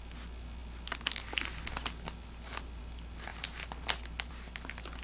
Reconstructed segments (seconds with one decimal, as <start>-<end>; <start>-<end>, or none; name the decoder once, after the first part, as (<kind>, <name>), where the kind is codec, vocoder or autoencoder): none